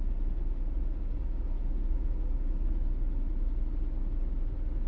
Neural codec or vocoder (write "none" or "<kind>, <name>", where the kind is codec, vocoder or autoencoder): none